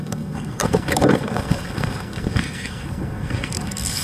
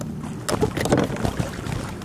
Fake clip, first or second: first